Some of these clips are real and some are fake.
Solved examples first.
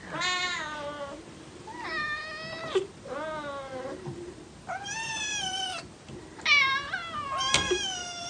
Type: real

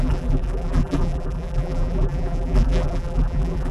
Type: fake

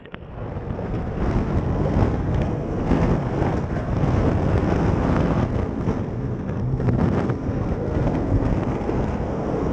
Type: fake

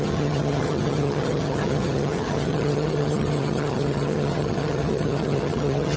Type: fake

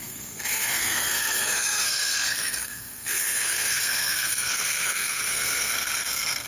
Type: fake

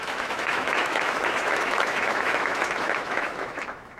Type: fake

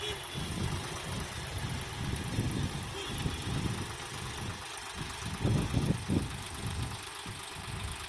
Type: real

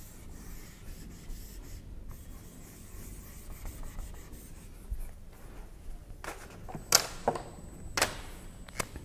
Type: real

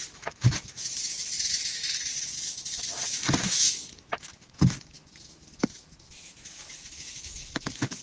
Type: fake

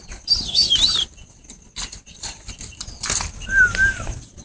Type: real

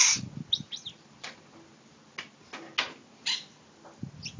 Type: real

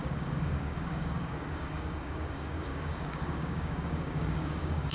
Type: fake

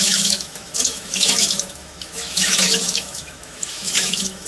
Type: fake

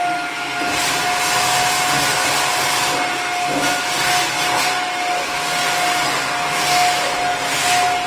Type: real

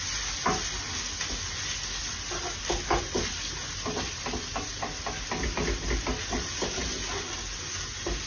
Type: real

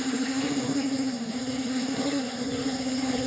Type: fake